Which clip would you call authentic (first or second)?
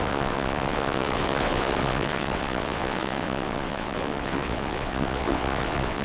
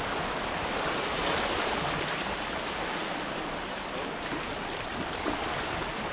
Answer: second